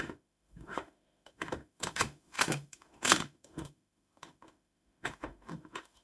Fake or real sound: fake